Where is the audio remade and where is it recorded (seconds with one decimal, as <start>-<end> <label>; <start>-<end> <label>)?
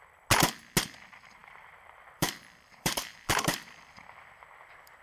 0.0-1.4 recorded; 1.4-4.0 remade; 4.0-5.0 recorded